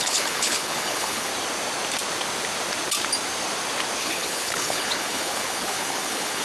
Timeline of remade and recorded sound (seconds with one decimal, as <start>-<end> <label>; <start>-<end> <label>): 0.0-1.3 remade; 1.3-4.0 recorded; 4.0-6.4 remade